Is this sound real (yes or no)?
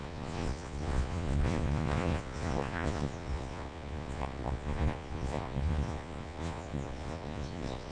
no